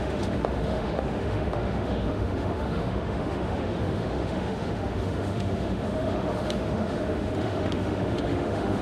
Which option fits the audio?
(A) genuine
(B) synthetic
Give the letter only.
B